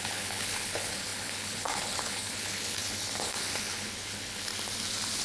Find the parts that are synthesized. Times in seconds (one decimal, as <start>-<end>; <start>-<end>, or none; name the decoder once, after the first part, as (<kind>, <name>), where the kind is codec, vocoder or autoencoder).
0.0-4.5 (codec, HILCodec)